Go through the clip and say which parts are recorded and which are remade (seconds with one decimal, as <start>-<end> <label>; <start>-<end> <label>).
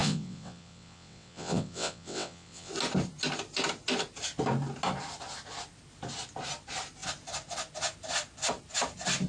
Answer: 0.0-2.7 remade; 2.7-9.3 recorded